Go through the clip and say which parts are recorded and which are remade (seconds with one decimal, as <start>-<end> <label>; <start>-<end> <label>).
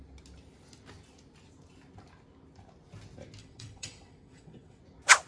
0.0-3.4 recorded; 3.4-4.8 remade; 4.8-5.3 recorded